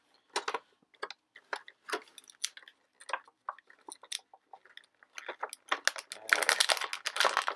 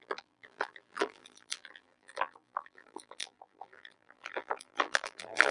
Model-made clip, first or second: second